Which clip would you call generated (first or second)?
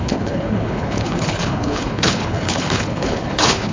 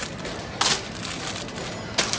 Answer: first